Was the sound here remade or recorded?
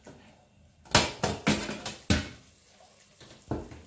recorded